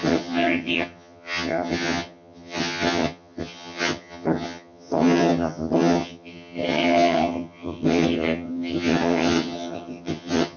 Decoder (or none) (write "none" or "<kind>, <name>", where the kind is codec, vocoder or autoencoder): vocoder, HiFi-GAN